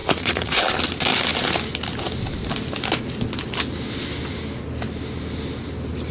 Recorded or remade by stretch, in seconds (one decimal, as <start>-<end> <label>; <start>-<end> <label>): 0.0-0.6 remade; 0.6-6.1 recorded